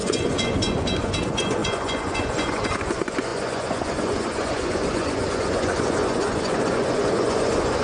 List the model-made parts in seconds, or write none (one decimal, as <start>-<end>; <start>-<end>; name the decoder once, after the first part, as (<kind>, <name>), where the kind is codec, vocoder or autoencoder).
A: 0.0-7.8 (vocoder, Vocos)